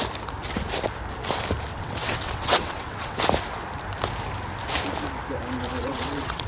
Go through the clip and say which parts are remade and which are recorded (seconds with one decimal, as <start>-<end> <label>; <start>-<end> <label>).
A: 0.0-1.7 recorded; 1.7-3.2 remade; 3.2-5.8 recorded; 5.8-6.5 remade